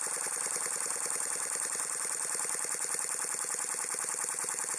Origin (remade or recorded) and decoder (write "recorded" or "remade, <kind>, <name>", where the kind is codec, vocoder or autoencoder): recorded